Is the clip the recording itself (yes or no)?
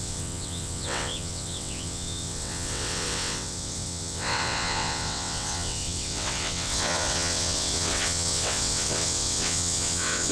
no